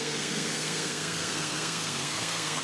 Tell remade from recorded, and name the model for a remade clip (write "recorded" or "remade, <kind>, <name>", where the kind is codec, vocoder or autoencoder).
remade, codec, SNAC